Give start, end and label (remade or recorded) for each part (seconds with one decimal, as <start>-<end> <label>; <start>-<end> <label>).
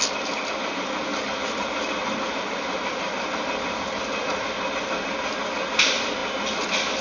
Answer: 0.0-1.1 recorded; 1.1-1.9 remade; 1.9-7.0 recorded